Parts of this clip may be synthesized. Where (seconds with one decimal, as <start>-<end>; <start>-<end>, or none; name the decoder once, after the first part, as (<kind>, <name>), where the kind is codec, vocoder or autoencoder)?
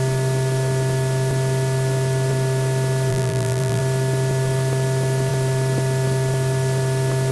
3.1-3.8 (vocoder, BigVGAN v2)